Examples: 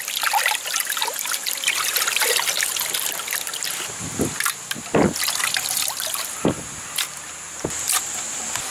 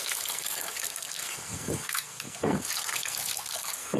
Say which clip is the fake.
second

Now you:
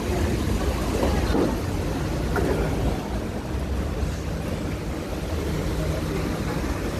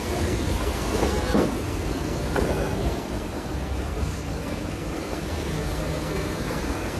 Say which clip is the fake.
second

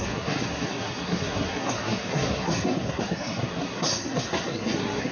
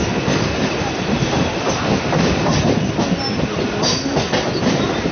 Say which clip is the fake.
first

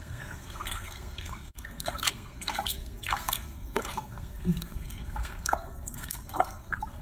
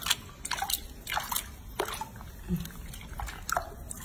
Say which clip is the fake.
first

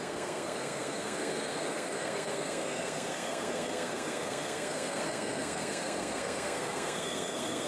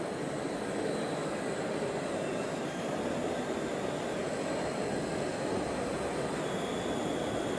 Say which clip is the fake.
first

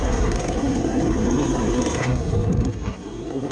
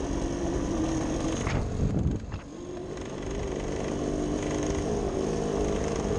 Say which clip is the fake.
first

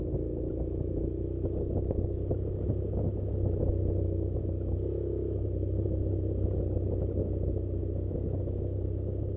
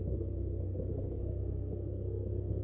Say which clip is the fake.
second